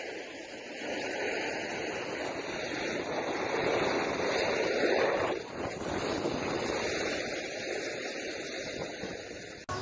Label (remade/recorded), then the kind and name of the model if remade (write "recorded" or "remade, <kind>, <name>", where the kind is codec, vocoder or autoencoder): recorded